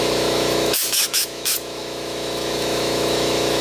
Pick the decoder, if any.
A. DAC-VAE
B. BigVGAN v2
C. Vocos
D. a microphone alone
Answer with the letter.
A